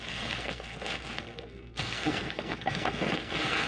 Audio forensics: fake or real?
fake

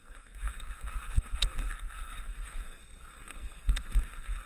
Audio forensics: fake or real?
fake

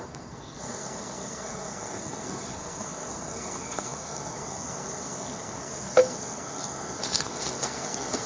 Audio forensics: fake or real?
fake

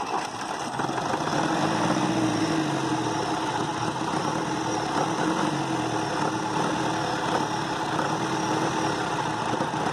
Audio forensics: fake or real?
real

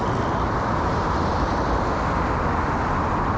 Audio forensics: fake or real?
real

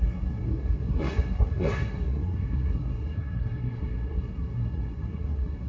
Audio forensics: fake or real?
fake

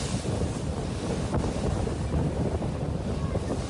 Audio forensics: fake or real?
real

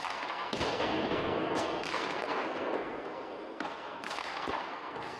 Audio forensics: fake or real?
fake